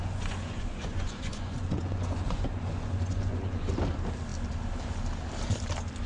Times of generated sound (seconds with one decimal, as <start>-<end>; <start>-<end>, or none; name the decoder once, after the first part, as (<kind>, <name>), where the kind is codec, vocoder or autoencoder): 0.0-3.7 (vocoder, Vocos)